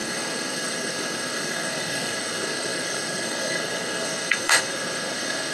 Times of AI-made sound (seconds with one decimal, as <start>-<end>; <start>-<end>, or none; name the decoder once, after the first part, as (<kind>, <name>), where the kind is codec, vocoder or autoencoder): 0.0-5.5 (codec, SNAC)